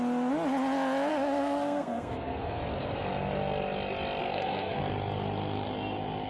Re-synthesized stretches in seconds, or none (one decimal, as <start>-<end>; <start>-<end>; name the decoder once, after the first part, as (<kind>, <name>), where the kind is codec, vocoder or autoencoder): 1.1-2.6 (codec, SNAC); 4.2-4.8